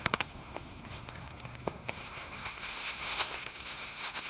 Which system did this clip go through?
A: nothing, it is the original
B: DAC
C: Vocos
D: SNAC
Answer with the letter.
D